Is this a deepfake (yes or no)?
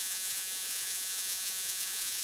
yes